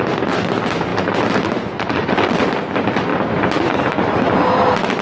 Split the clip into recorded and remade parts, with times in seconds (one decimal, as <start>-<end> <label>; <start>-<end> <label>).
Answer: 0.0-5.0 recorded